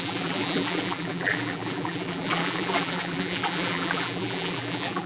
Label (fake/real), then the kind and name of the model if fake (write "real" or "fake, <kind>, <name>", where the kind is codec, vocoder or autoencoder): fake, vocoder, BigVGAN v2